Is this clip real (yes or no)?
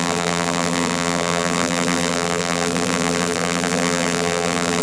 no